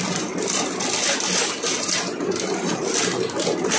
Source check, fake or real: real